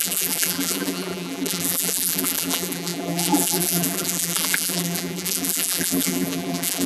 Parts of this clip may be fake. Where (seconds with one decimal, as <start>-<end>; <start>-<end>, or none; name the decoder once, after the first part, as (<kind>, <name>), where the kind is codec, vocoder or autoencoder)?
0.0-6.9 (vocoder, BigVGAN v2)